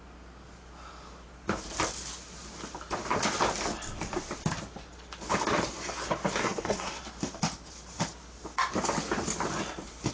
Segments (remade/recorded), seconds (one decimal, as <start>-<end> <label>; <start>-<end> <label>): 0.0-6.4 recorded; 6.4-7.0 remade; 7.0-10.1 recorded